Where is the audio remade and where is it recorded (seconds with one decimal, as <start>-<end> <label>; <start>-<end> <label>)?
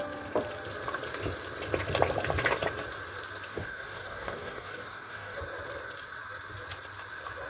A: 0.0-3.5 recorded; 3.5-5.4 remade; 5.4-7.5 recorded